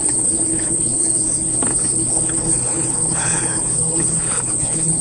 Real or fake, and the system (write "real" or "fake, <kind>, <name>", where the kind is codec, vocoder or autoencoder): fake, codec, HILCodec